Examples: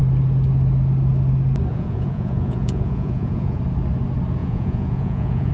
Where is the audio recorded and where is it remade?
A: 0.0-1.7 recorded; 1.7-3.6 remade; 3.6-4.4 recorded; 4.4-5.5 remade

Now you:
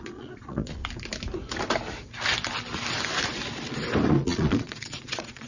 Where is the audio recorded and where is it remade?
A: 0.0-0.8 remade; 0.8-4.1 recorded; 4.1-5.5 remade

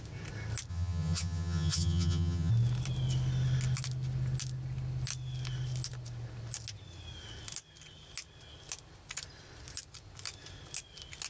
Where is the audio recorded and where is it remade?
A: 0.0-0.7 recorded; 0.7-2.5 remade; 2.5-11.3 recorded

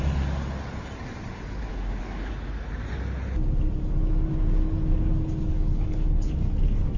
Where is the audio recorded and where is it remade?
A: 0.0-1.7 recorded; 1.7-2.3 remade; 2.3-5.5 recorded; 5.5-6.3 remade; 6.3-7.0 recorded

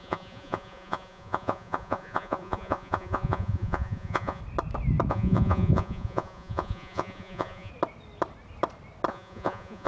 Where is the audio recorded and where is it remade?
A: 0.0-4.4 remade; 4.4-5.1 recorded; 5.1-7.7 remade; 7.7-9.1 recorded; 9.1-9.9 remade

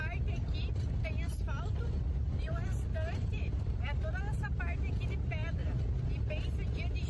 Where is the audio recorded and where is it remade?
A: 0.0-2.2 recorded; 2.2-3.8 remade; 3.8-7.1 recorded